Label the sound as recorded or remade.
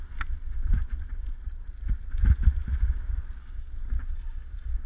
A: recorded